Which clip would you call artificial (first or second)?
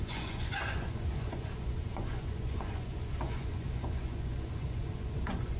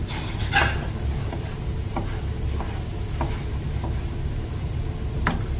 first